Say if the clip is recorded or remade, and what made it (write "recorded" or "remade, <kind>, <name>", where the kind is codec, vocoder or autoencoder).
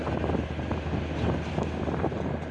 recorded